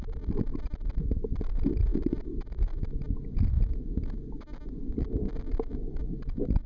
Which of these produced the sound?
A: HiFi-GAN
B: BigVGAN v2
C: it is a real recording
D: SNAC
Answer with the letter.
C